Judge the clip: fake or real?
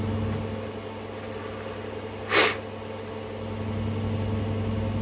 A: real